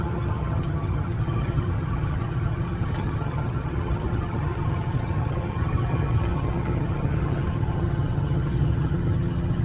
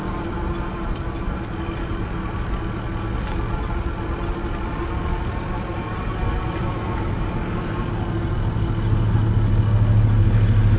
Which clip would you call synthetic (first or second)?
first